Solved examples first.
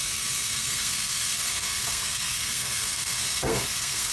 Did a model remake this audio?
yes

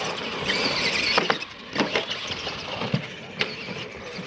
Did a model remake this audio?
no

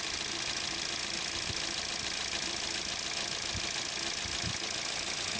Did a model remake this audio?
no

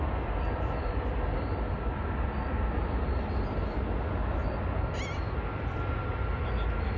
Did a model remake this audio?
no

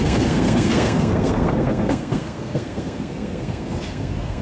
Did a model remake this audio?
yes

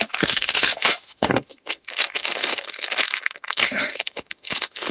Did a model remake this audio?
yes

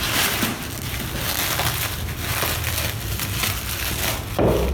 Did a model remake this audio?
no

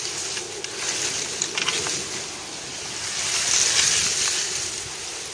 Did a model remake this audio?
no